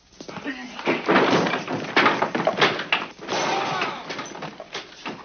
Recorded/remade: recorded